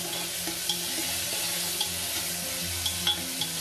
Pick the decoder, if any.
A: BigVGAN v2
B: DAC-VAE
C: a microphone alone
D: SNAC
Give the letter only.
C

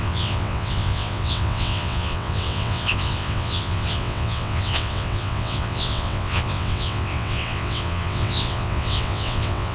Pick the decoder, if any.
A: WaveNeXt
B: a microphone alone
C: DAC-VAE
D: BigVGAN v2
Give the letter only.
A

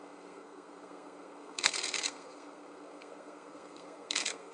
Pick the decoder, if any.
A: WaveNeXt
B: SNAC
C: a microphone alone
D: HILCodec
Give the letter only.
B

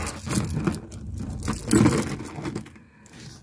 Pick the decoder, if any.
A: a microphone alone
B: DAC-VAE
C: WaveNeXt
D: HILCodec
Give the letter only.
A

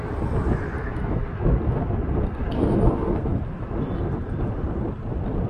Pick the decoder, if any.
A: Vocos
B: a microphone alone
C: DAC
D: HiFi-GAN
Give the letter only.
B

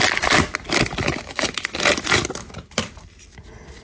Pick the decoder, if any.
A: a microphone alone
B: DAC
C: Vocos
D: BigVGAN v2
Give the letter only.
A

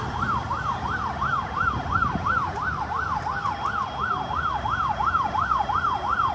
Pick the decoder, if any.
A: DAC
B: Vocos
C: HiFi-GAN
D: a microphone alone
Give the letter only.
D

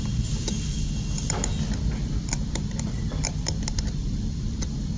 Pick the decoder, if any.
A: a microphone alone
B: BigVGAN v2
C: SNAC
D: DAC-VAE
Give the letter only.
B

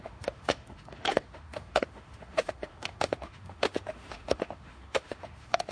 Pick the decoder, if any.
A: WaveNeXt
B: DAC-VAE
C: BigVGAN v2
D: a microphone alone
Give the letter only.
B